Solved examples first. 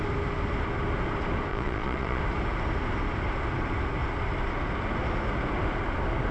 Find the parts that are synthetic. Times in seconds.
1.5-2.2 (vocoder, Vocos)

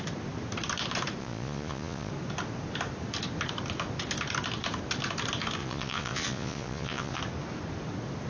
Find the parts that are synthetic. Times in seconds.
1.2-2.1 (vocoder, Vocos); 5.6-7.2